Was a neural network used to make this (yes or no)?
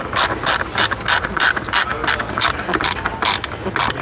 no